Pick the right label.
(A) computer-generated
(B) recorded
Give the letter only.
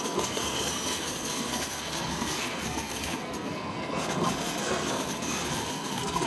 A